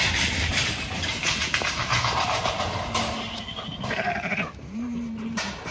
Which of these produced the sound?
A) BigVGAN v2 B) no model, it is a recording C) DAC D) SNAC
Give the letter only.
A